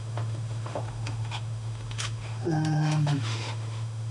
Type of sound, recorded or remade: remade